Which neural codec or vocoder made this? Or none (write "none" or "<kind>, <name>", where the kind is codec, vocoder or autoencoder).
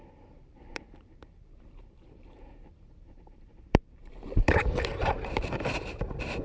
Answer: vocoder, BigVGAN v2